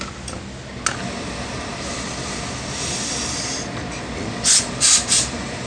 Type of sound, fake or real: real